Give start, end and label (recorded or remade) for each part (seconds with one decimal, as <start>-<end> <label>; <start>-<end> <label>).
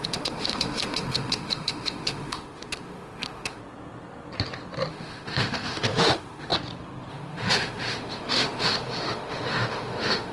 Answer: 0.0-3.6 remade; 3.6-4.9 recorded; 4.9-6.5 remade; 6.5-7.1 recorded; 7.1-10.3 remade